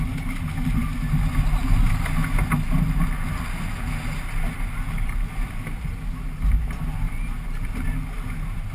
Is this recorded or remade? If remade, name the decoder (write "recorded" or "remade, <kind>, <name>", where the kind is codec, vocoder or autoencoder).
recorded